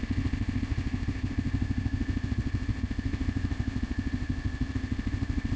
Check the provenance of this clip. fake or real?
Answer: fake